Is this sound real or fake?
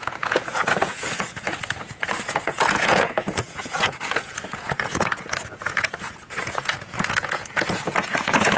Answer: fake